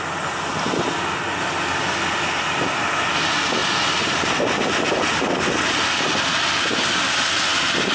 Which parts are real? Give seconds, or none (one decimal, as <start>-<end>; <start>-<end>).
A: 0.0-7.9